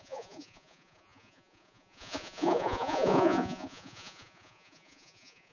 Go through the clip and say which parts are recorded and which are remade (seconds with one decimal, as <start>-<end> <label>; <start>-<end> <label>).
0.0-5.5 remade